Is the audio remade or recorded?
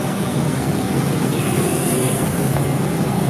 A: remade